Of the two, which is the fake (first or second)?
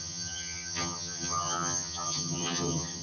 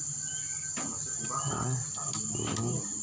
first